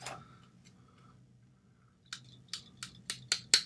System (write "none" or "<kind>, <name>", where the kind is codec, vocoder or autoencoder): none